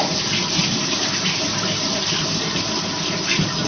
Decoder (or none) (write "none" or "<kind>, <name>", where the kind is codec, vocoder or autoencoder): none